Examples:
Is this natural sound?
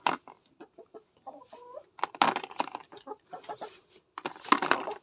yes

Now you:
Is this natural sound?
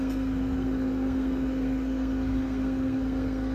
no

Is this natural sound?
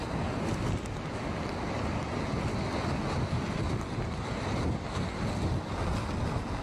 yes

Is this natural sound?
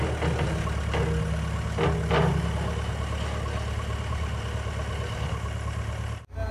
yes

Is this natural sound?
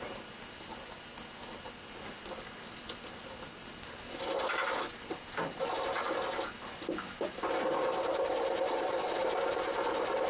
yes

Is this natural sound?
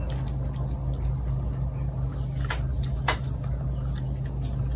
yes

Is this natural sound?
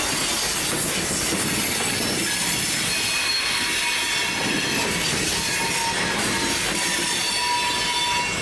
yes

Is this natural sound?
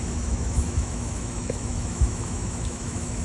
no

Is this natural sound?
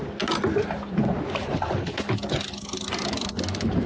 yes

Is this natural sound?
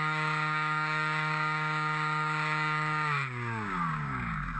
no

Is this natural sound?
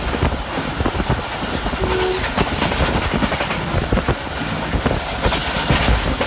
yes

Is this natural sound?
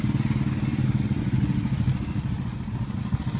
yes